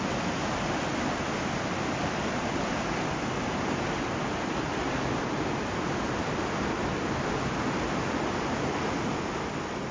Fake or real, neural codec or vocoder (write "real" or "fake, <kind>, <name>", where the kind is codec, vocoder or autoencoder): real